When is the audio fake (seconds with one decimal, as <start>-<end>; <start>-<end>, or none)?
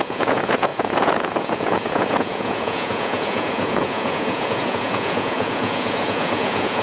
0.0-6.8